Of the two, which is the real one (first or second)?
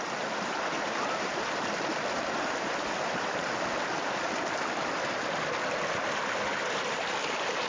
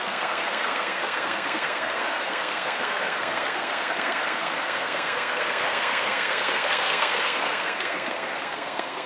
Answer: first